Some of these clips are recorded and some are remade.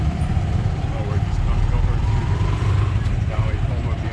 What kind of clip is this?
remade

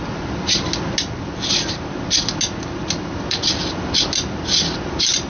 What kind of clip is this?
recorded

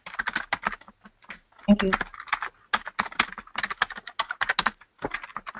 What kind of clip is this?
recorded